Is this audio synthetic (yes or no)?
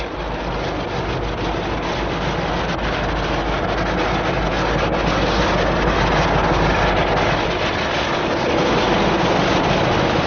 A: no